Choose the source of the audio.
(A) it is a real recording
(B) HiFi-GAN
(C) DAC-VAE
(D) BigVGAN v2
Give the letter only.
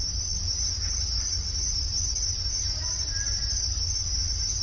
A